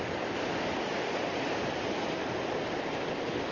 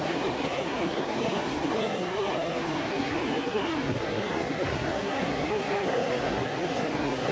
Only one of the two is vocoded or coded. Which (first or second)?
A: second